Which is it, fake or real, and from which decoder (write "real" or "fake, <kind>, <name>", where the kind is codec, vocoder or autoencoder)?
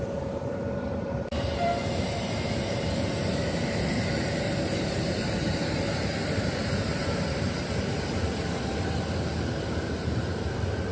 fake, vocoder, BigVGAN v2